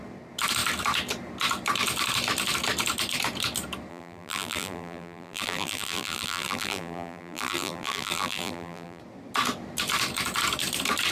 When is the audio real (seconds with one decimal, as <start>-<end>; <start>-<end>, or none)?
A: 0.0-3.9; 9.0-11.1